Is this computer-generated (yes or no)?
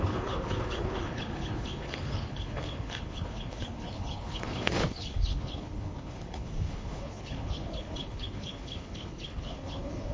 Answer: yes